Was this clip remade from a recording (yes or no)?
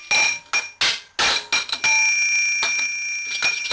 no